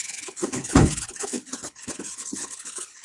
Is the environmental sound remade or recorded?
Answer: remade